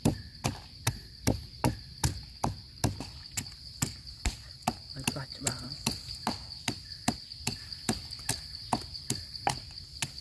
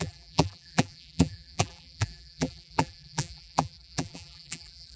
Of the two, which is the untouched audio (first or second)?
first